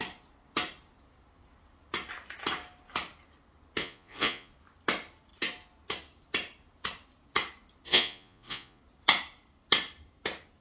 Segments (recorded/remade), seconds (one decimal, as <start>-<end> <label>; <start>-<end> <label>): 0.0-3.8 recorded; 3.8-4.5 remade; 4.5-7.9 recorded; 7.9-8.8 remade; 8.8-10.6 recorded